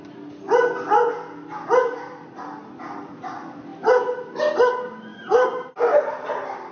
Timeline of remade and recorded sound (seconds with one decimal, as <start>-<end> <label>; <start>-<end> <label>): 0.0-5.1 recorded; 5.1-6.7 remade